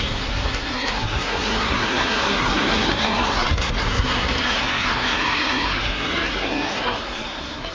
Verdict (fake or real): fake